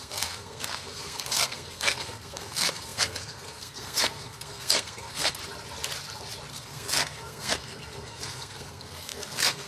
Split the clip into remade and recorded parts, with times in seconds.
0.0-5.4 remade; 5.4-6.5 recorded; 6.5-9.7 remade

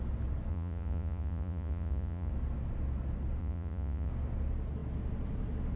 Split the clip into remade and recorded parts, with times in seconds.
0.0-0.5 recorded; 0.5-2.3 remade; 2.3-3.4 recorded; 3.4-4.1 remade; 4.1-5.8 recorded

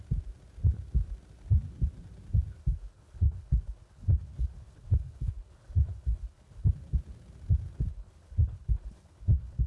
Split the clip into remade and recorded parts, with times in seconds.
0.0-2.6 recorded; 2.6-6.7 remade; 6.7-7.9 recorded; 7.9-9.7 remade

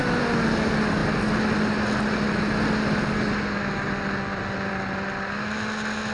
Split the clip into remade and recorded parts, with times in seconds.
0.0-6.1 recorded

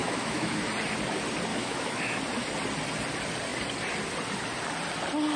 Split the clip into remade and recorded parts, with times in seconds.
0.0-0.6 remade; 0.6-1.5 recorded; 1.5-2.2 remade; 2.2-5.4 recorded

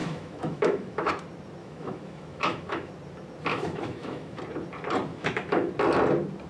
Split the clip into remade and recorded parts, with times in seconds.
0.0-1.1 remade; 1.1-1.6 recorded; 1.6-2.9 remade; 2.9-3.5 recorded; 3.5-4.4 remade; 4.4-5.1 recorded; 5.1-5.7 remade; 5.7-6.5 recorded